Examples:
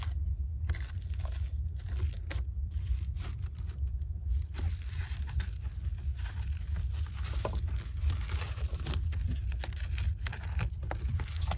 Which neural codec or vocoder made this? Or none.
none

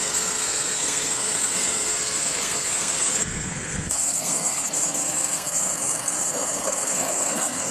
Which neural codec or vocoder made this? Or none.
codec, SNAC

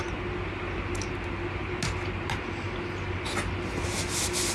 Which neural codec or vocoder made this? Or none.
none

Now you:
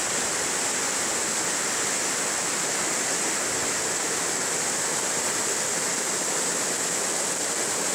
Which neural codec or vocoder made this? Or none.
none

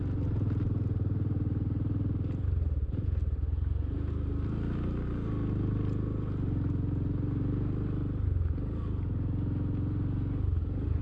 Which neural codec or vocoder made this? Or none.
none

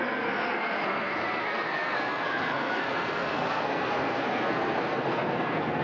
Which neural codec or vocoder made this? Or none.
codec, SNAC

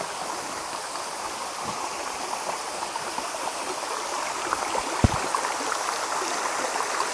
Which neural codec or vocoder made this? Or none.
none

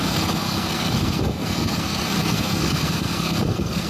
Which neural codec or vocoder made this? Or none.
codec, SNAC